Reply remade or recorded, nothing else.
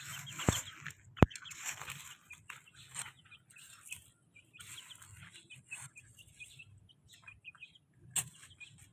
recorded